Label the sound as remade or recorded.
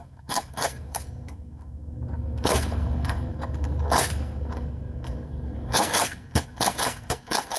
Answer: remade